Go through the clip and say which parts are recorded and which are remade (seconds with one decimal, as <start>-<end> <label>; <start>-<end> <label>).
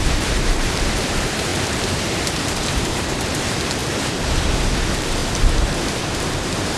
0.0-3.8 remade; 3.8-4.8 recorded; 4.8-5.2 remade; 5.2-6.8 recorded